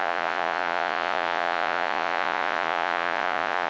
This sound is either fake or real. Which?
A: fake